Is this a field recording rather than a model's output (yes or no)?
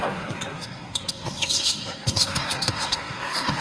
no